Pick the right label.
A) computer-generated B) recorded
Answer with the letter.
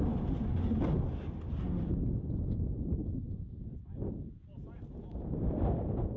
B